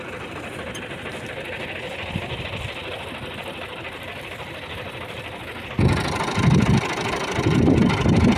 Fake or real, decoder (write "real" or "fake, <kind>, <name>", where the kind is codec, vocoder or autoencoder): real